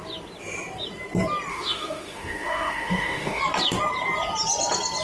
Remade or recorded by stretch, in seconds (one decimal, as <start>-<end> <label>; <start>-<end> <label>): 0.0-1.5 recorded; 1.5-3.4 remade; 3.4-5.0 recorded